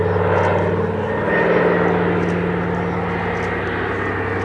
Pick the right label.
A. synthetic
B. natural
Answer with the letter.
B